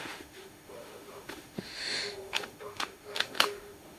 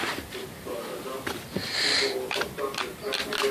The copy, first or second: first